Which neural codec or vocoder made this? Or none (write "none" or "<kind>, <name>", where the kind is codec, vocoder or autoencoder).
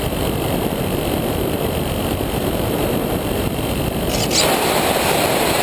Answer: none